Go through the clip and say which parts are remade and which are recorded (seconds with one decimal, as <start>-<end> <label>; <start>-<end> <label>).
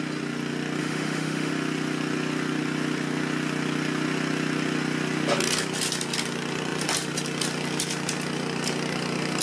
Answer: 0.0-0.8 recorded; 0.8-1.5 remade; 1.5-9.4 recorded